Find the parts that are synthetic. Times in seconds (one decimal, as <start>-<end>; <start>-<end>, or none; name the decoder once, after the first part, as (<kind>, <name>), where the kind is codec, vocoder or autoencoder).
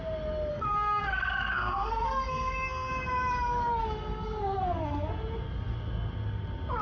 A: 0.5-2.9 (codec, SNAC); 3.8-5.1